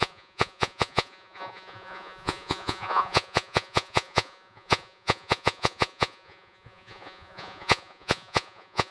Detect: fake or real fake